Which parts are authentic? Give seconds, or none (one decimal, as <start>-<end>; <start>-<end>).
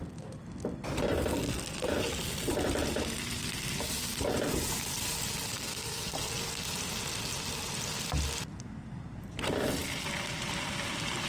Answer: 0.0-5.5; 6.3-11.3